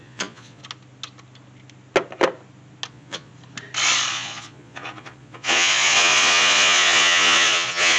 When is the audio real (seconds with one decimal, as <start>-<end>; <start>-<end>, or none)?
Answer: 0.6-2.9; 3.3-4.1

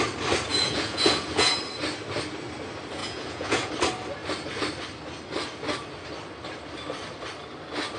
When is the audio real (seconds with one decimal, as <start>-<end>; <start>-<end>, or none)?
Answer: 0.0-0.5; 1.6-3.0; 3.7-8.0

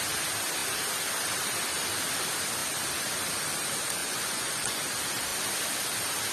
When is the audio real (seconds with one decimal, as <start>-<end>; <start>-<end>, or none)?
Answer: 0.0-4.0; 4.8-6.3

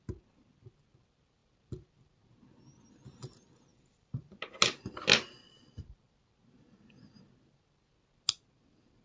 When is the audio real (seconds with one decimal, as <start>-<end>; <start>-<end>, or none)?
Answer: 0.0-9.0

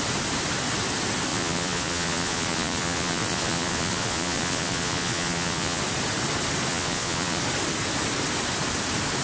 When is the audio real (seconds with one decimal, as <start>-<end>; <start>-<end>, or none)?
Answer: 0.0-1.3; 5.8-6.7; 7.4-9.2